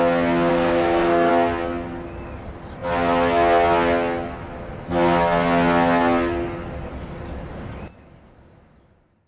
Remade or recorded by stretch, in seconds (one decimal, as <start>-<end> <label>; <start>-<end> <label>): 0.0-0.5 recorded; 0.5-1.3 remade; 1.3-9.3 recorded